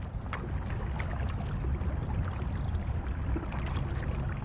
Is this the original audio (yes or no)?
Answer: yes